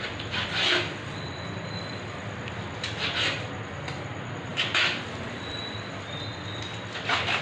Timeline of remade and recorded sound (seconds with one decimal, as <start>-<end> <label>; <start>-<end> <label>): 0.0-7.4 recorded